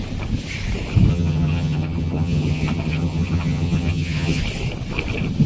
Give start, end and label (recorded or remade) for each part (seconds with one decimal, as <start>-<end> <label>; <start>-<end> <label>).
0.0-1.1 recorded; 1.1-4.4 remade; 4.4-5.5 recorded